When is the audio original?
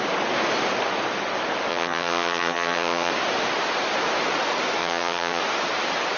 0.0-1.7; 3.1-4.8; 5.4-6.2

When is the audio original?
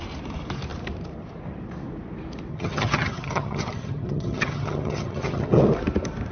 0.0-2.5; 5.6-6.3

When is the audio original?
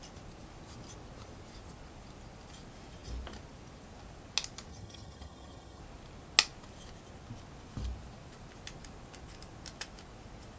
0.0-4.7; 5.8-10.6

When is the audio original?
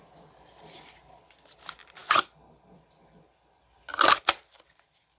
0.0-5.2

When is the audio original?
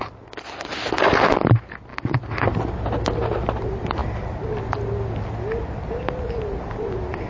0.0-7.3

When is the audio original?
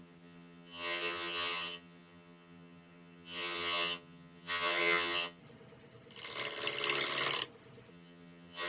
5.4-7.9